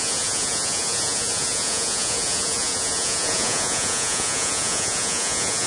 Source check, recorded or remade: remade